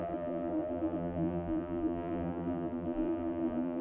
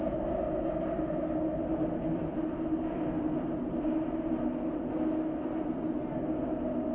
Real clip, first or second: second